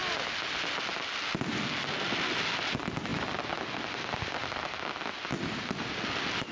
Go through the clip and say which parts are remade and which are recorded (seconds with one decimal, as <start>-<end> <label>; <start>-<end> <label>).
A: 0.0-6.5 recorded